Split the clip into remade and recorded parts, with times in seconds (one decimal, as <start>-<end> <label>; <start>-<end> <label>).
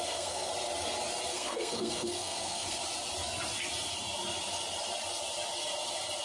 0.0-0.5 remade; 0.5-1.3 recorded; 1.3-2.8 remade; 2.8-6.2 recorded